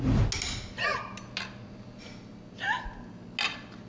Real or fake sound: real